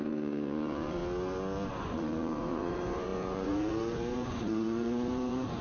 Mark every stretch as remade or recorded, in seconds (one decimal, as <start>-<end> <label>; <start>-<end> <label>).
0.0-1.0 remade; 1.0-1.7 recorded; 1.7-5.6 remade